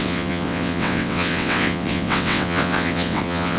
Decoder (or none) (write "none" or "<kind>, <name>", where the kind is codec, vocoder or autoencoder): vocoder, WaveNeXt